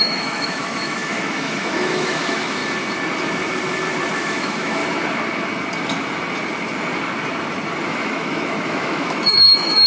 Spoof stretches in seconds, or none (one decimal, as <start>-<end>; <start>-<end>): 0.0-2.6; 4.1-4.8; 7.9-9.9